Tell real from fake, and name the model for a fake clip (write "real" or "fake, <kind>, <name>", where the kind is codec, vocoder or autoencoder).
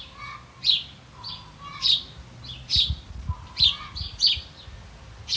real